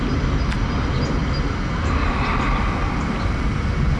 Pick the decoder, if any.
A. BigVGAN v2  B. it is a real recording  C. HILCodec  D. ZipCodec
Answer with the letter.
B